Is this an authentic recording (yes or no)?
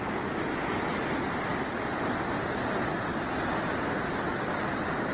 yes